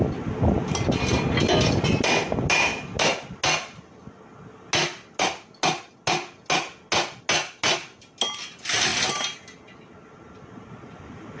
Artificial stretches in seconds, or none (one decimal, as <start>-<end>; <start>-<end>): none